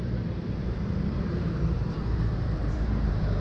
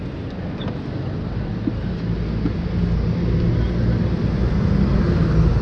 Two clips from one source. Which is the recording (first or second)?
second